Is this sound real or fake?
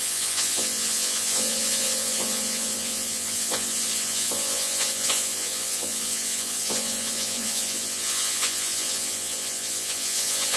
fake